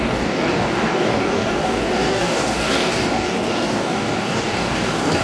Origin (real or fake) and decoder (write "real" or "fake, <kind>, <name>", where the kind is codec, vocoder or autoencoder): fake, codec, DAC